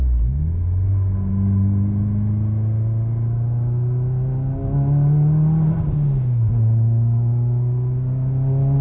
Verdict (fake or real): real